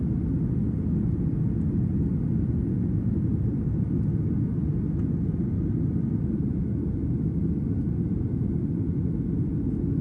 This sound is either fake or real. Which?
real